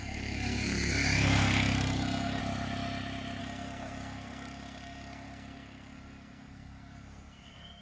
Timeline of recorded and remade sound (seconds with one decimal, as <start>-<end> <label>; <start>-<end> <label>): 0.0-2.4 remade; 2.4-3.4 recorded; 3.4-7.8 remade